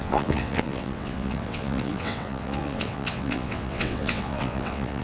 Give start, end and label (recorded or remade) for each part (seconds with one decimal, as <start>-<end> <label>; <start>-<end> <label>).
0.0-5.0 remade

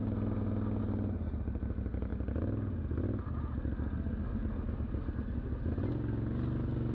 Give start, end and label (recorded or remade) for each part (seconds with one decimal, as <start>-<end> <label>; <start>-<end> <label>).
0.0-6.9 recorded

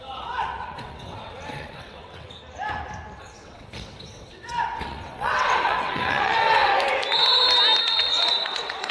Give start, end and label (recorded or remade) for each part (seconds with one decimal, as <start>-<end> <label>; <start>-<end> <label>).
0.0-2.4 remade; 2.4-3.2 recorded; 3.2-6.7 remade; 6.7-7.8 recorded; 7.8-8.9 remade

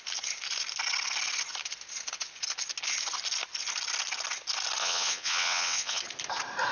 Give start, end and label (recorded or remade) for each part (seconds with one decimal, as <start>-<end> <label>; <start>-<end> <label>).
0.0-4.8 recorded; 4.8-6.0 remade; 6.0-6.7 recorded

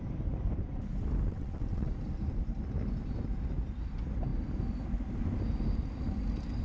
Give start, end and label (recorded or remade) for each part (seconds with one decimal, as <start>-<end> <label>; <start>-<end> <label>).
0.0-1.3 recorded; 1.3-1.9 remade; 1.9-6.6 recorded